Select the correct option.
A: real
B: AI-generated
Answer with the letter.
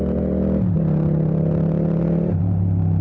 A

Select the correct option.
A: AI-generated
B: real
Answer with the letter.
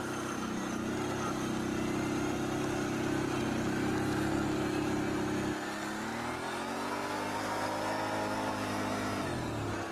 B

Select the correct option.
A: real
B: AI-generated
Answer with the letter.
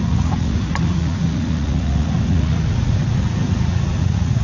B